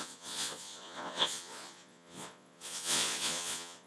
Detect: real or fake fake